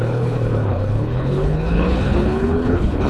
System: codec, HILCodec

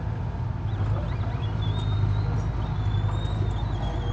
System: none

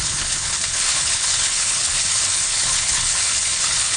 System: codec, HILCodec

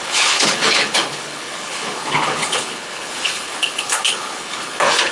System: codec, HILCodec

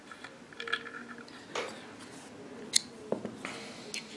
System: none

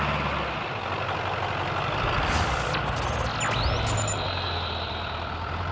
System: none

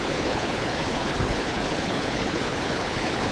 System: codec, HILCodec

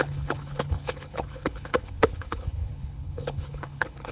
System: codec, HILCodec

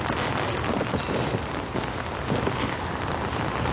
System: none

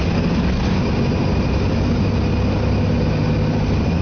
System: none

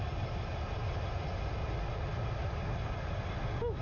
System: none